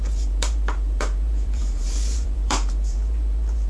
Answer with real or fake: fake